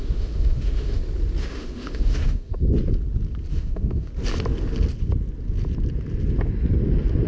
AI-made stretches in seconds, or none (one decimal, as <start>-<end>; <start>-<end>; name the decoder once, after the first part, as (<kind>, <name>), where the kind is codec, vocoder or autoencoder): 0.0-1.0 (autoencoder, DAC-VAE); 1.4-2.5; 3.5-4.1

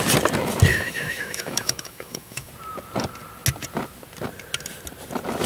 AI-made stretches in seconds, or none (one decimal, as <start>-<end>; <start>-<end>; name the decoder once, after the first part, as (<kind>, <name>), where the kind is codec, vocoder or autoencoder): 0.7-2.5 (autoencoder, DAC-VAE)